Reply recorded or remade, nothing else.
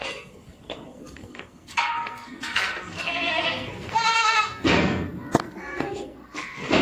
remade